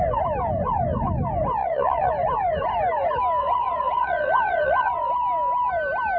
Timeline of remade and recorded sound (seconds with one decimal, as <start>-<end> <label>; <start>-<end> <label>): 0.0-1.6 recorded; 1.6-2.1 remade; 2.1-3.4 recorded; 3.4-5.1 remade; 5.1-6.2 recorded